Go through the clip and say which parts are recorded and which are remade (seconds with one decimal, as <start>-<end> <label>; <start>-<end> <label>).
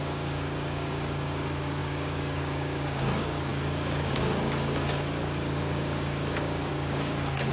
0.0-7.5 remade